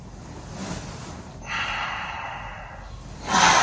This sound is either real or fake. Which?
real